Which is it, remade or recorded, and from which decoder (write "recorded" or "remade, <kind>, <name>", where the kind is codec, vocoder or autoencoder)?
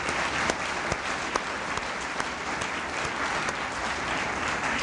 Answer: recorded